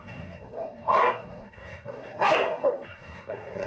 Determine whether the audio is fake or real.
fake